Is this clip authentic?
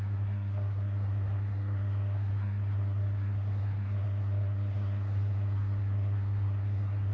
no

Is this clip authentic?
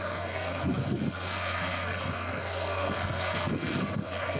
no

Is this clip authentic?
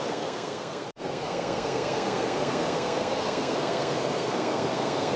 no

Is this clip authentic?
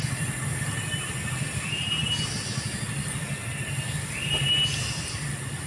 yes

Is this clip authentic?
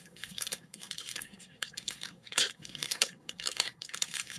no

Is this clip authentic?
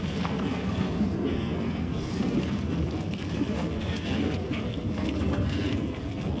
no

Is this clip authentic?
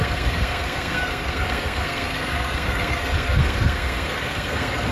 no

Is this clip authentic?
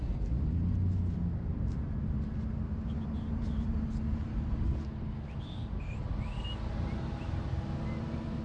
yes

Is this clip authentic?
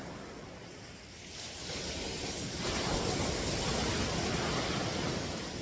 yes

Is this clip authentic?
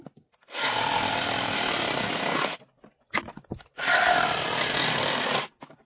yes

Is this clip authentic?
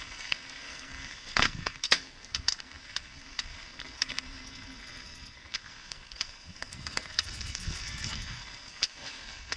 no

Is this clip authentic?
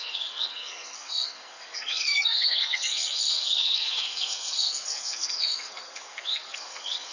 no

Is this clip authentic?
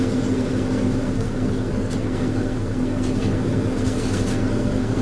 no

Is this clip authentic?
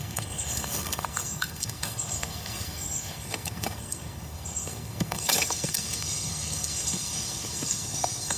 no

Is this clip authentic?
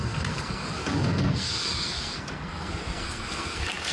no